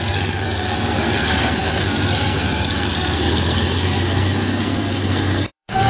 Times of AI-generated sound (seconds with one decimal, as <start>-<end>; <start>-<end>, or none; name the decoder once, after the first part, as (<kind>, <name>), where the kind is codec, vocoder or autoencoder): 0.0-5.9 (codec, SNAC)